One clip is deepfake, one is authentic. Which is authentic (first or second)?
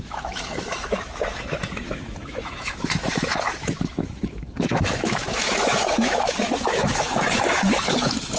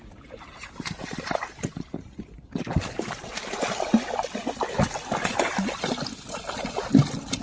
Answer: second